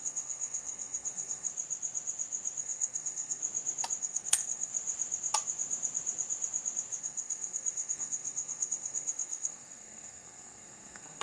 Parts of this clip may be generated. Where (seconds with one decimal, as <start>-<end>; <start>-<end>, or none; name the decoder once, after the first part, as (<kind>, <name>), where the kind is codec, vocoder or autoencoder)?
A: 0.0-1.5 (codec, SNAC); 2.6-3.4; 4.0-4.7; 7.0-11.2